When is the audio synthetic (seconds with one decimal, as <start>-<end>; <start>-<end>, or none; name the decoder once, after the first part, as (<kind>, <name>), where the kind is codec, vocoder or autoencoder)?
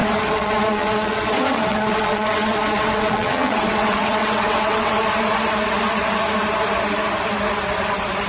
0.0-5.0 (vocoder, WaveNeXt)